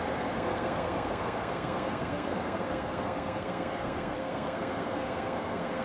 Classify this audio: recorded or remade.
remade